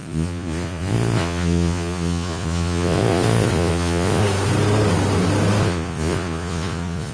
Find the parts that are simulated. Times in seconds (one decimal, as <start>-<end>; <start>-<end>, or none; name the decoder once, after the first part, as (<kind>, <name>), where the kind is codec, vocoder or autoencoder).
0.0-4.2 (vocoder, Vocos); 5.6-7.1